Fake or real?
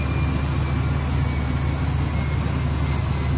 real